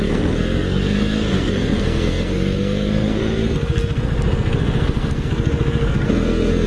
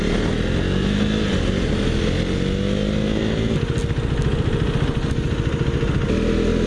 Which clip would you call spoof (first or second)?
first